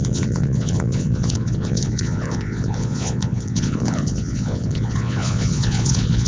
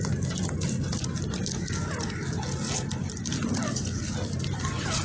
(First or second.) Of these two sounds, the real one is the second